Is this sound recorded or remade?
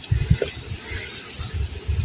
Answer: recorded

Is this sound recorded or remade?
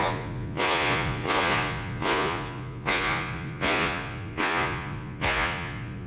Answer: remade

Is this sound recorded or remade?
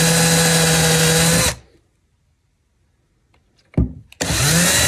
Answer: recorded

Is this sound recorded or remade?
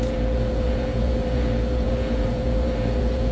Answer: remade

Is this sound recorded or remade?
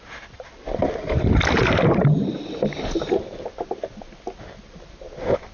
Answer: recorded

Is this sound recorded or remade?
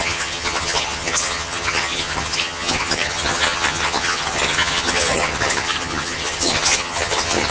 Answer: remade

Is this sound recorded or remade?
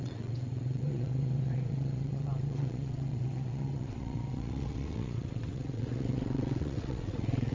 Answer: remade